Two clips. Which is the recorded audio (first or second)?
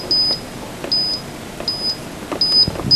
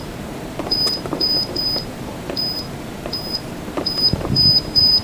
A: first